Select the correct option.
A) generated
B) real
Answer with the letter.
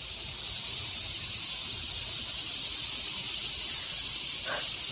B